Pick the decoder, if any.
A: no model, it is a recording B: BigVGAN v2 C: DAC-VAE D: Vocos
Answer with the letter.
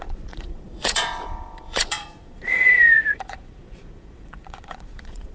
D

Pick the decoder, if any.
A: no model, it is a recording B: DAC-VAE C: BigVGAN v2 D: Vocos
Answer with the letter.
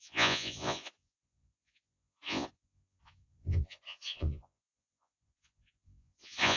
D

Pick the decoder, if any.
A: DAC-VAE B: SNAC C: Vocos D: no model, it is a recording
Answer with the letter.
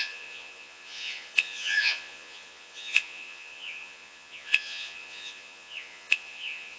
C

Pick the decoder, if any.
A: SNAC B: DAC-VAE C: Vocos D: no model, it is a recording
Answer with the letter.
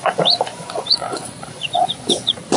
C